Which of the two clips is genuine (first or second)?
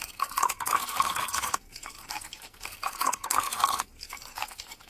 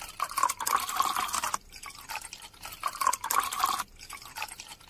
second